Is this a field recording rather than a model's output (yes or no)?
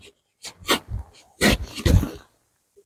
yes